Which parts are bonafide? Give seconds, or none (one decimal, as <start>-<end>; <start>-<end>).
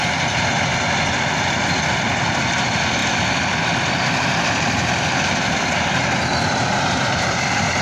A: 0.7-1.4